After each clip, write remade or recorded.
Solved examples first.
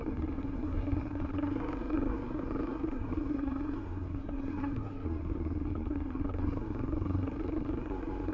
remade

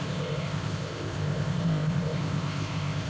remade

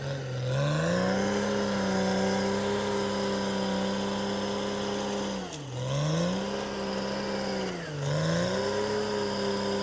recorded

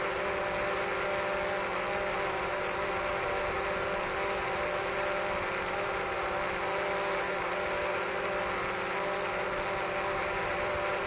recorded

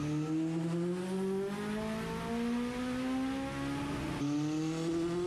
recorded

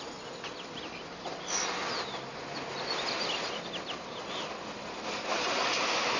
recorded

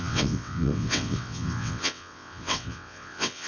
remade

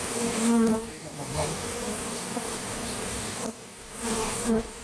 remade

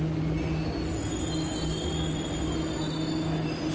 recorded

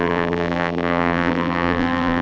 remade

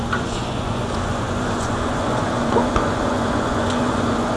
remade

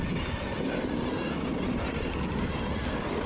recorded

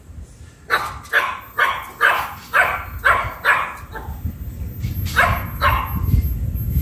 recorded